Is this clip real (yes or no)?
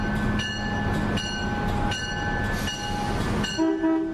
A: yes